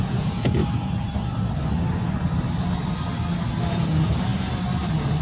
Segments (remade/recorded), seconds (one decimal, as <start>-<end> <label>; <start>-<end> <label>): 0.0-0.6 remade; 0.6-3.7 recorded; 3.7-4.3 remade; 4.3-5.2 recorded